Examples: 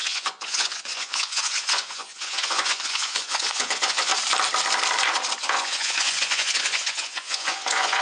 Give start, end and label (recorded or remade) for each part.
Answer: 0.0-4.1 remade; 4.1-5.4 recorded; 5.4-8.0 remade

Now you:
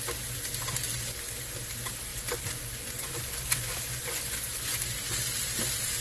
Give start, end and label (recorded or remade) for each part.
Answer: 0.0-2.1 recorded; 2.1-4.8 remade; 4.8-6.0 recorded

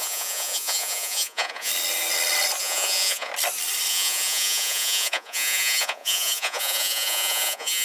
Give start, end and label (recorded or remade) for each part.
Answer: 0.0-1.7 remade; 1.7-2.6 recorded; 2.6-3.3 remade; 3.3-3.9 recorded; 3.9-7.8 remade

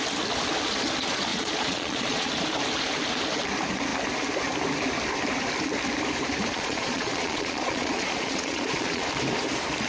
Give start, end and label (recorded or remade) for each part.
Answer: 0.0-1.3 recorded; 1.3-2.3 remade; 2.3-6.5 recorded; 6.5-9.1 remade; 9.1-9.9 recorded

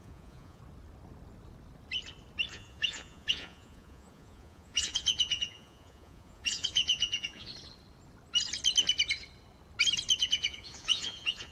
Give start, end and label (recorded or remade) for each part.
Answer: 0.0-0.6 remade; 0.6-2.5 recorded; 2.5-7.5 remade; 7.5-10.2 recorded; 10.2-11.5 remade

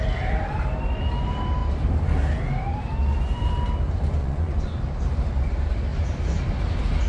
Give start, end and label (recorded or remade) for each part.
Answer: 0.0-4.2 recorded; 4.2-4.8 remade; 4.8-7.1 recorded

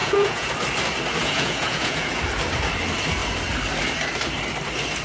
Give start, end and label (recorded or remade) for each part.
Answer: 0.0-0.5 remade; 0.5-1.2 recorded; 1.2-2.2 remade; 2.2-5.0 recorded

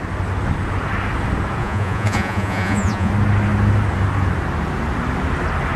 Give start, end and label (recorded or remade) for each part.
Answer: 0.0-1.6 recorded; 1.6-3.1 remade; 3.1-5.8 recorded